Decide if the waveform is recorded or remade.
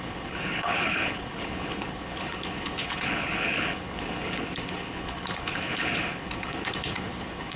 remade